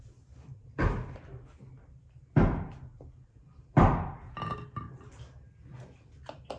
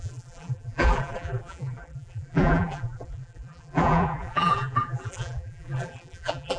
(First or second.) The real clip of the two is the first